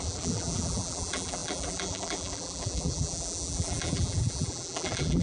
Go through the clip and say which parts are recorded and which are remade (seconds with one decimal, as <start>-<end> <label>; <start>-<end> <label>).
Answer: 0.0-5.2 remade